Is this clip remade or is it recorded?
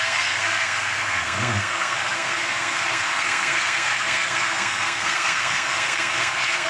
remade